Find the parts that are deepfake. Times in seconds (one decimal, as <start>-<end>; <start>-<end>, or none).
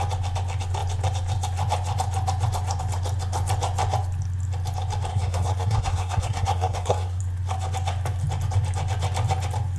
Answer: 5.1-7.2